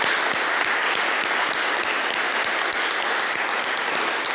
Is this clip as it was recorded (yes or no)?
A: yes